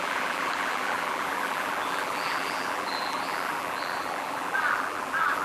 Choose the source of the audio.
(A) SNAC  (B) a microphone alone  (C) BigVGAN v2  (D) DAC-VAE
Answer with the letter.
C